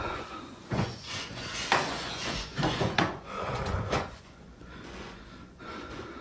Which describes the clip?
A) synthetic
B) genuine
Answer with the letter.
A